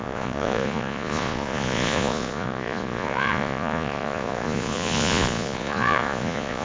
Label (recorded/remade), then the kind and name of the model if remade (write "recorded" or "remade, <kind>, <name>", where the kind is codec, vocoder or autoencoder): remade, vocoder, Vocos